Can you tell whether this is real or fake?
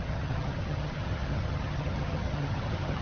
fake